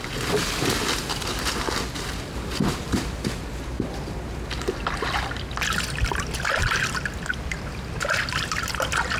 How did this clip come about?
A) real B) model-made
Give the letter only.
A